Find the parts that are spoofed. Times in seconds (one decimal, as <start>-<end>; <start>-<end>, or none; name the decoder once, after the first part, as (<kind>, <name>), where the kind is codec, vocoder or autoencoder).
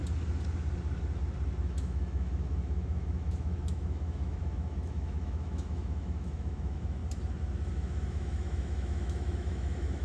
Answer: 1.6-7.0 (autoencoder, DAC-VAE); 7.7-10.0